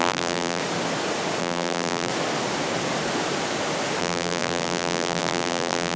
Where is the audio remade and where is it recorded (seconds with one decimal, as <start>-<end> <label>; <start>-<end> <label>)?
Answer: 0.0-0.6 remade; 0.6-1.4 recorded; 1.4-2.1 remade; 2.1-4.0 recorded; 4.0-6.0 remade